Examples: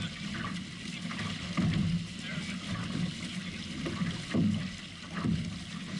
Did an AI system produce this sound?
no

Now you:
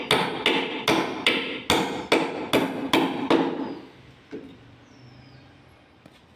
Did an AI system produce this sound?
no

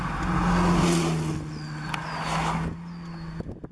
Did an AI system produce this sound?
no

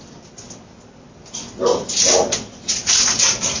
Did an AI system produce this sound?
no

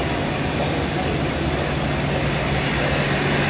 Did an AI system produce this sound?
no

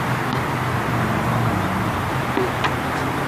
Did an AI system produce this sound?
no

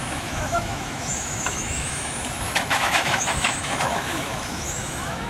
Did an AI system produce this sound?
yes